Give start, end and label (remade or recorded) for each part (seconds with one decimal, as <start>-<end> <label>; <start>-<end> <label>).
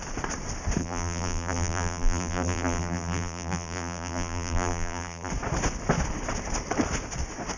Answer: 0.0-0.8 recorded; 0.8-5.3 remade; 5.3-7.6 recorded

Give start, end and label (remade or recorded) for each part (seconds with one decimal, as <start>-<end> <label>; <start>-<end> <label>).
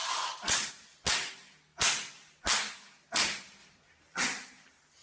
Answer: 0.0-3.6 recorded; 3.6-4.2 remade; 4.2-5.0 recorded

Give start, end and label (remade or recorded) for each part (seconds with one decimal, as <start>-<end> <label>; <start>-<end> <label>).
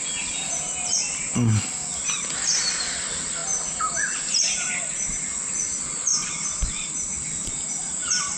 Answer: 0.0-8.4 recorded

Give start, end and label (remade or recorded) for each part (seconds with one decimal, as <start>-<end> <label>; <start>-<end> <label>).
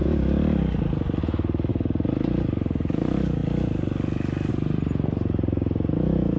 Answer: 0.0-1.7 recorded; 1.7-3.4 remade; 3.4-4.5 recorded; 4.5-6.4 remade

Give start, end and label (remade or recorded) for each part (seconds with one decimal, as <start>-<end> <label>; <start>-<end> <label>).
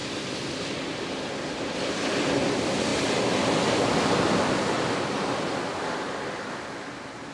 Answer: 0.0-7.3 recorded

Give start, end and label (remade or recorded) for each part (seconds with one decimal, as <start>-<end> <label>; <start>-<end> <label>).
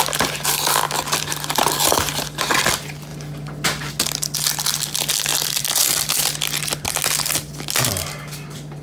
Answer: 0.0-5.3 recorded; 5.3-6.1 remade; 6.1-8.8 recorded